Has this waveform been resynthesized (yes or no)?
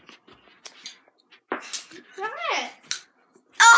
no